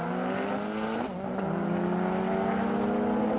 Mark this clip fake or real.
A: real